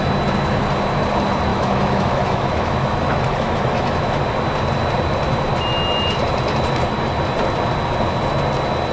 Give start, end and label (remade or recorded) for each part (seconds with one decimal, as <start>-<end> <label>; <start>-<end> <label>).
0.0-1.5 recorded; 1.5-4.2 remade; 4.2-8.9 recorded